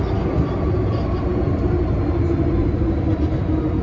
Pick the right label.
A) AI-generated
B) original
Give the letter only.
B